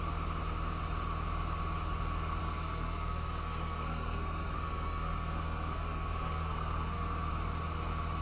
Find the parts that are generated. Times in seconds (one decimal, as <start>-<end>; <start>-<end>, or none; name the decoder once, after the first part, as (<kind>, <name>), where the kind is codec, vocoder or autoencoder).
2.4-7.3 (codec, SNAC)